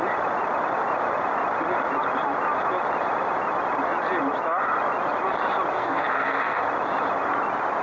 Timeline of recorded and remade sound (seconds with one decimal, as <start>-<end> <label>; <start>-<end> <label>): 0.0-5.7 recorded; 5.7-6.6 remade; 6.6-7.8 recorded